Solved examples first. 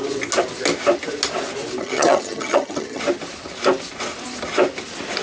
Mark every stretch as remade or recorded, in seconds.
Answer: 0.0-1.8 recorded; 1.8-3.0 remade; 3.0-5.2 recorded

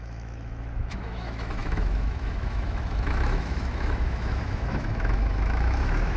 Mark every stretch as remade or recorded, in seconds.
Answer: 0.0-6.2 remade

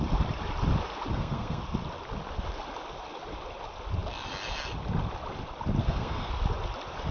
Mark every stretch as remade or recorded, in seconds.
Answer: 0.0-1.1 recorded; 1.1-1.6 remade; 1.6-5.8 recorded; 5.8-6.3 remade; 6.3-7.1 recorded